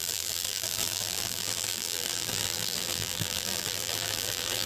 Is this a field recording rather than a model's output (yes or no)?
no